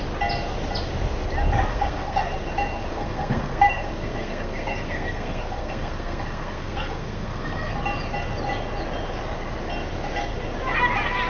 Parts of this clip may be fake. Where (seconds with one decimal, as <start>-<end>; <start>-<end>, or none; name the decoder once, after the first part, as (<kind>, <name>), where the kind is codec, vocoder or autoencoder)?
1.7-2.4 (codec, SNAC); 2.9-7.7